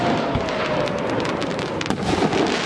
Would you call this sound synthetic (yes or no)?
yes